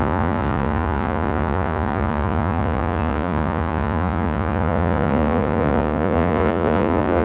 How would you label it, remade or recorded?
remade